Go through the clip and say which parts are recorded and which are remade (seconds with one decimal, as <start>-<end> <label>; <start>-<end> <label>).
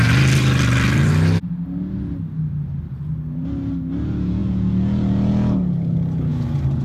0.0-1.1 remade; 1.1-6.8 recorded